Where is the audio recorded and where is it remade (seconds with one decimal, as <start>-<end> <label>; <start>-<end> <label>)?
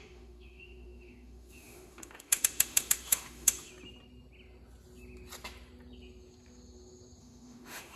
0.0-3.7 remade; 3.7-7.2 recorded; 7.2-8.0 remade